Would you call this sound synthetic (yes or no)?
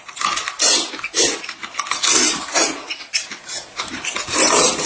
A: no